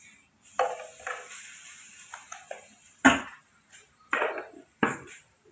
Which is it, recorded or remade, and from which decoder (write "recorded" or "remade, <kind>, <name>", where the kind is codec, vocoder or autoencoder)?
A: recorded